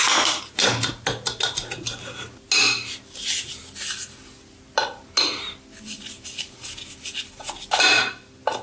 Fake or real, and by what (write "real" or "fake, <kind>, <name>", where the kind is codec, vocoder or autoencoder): real